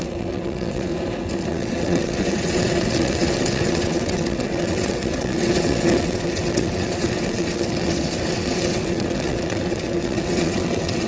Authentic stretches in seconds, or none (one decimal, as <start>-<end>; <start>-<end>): 0.9-1.5